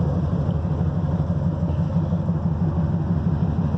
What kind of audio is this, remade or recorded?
recorded